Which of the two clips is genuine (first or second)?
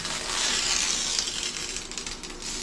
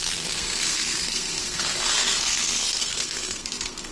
first